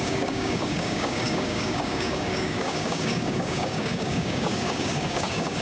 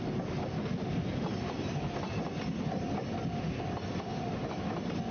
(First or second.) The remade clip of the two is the first